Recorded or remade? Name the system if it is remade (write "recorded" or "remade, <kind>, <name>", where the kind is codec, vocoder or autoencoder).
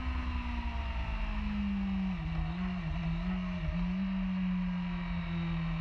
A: recorded